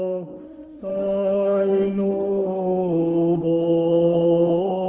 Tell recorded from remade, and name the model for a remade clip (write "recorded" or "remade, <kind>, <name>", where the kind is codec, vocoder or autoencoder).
remade, autoencoder, DAC-VAE